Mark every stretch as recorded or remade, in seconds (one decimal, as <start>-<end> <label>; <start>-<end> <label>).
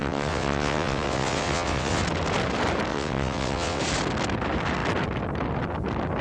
0.0-2.0 remade; 2.0-2.9 recorded; 2.9-3.8 remade; 3.8-6.2 recorded